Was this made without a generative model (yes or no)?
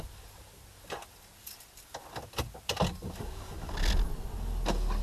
yes